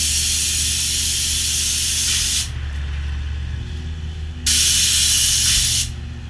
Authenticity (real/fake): real